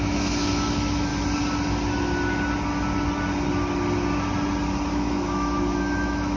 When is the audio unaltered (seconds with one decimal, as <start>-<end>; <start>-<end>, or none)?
1.1-4.9